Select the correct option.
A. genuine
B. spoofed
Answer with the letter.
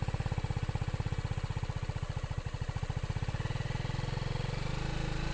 A